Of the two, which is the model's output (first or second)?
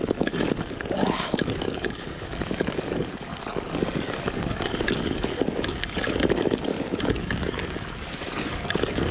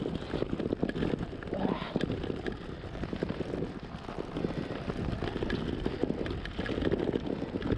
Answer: first